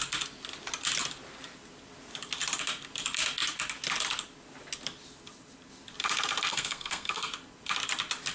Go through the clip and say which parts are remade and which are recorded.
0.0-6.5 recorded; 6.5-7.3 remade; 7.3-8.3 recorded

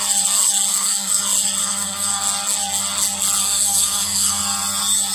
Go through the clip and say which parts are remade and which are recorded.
0.0-0.7 recorded; 0.7-1.2 remade; 1.2-1.6 recorded; 1.6-2.2 remade; 2.2-3.4 recorded; 3.4-4.4 remade; 4.4-5.1 recorded

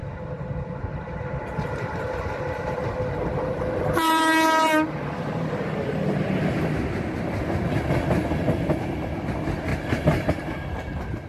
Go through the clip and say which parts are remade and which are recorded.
0.0-11.3 recorded

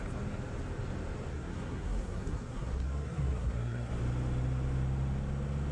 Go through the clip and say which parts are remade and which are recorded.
0.0-1.3 recorded; 1.3-3.9 remade; 3.9-5.7 recorded

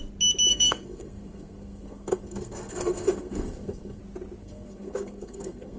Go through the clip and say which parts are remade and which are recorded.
0.0-0.5 recorded; 0.5-4.0 remade; 4.0-4.4 recorded; 4.4-5.8 remade